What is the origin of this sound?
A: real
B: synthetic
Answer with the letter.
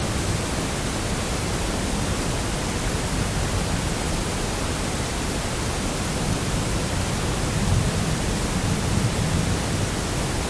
A